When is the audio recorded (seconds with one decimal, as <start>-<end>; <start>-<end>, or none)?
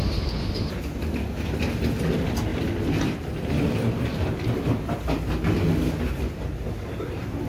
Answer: 0.0-7.5